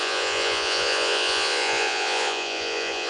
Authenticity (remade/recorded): remade